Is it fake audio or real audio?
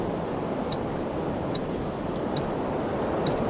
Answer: fake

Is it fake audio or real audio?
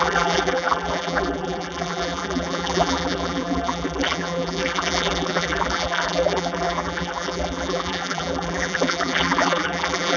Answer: fake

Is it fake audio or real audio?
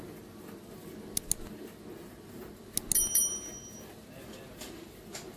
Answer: real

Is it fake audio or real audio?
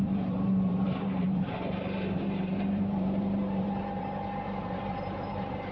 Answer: fake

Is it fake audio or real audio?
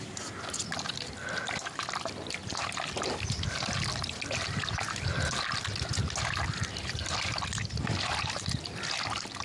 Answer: real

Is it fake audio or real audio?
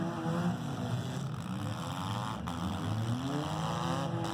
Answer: real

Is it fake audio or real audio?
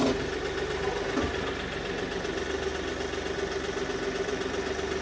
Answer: real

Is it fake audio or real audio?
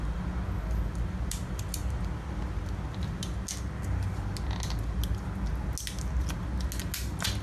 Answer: real